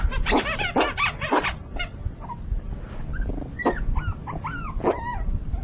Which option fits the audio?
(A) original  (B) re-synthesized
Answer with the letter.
A